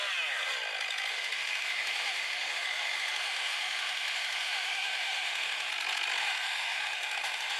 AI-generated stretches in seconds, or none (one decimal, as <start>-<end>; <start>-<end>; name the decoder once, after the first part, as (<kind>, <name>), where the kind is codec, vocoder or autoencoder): 1.1-5.7 (autoencoder, DAC-VAE); 6.2-7.6